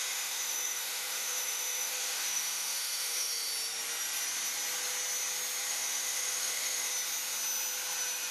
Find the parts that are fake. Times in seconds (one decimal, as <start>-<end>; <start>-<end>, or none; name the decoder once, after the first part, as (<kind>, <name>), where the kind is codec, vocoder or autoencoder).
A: 0.0-3.5 (autoencoder, DAC-VAE); 5.7-6.9